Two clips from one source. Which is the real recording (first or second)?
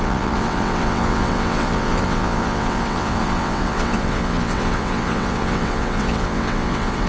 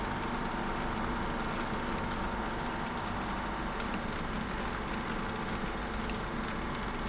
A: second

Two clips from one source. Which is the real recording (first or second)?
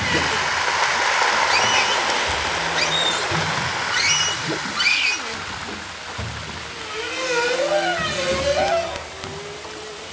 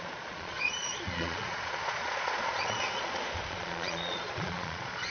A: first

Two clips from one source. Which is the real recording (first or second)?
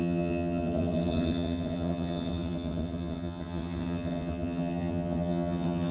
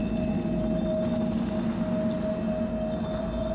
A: second